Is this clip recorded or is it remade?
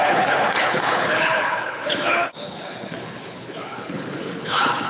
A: remade